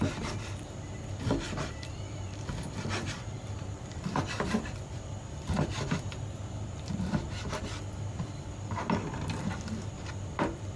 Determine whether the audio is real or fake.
fake